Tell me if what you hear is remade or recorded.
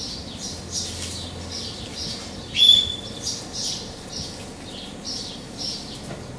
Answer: recorded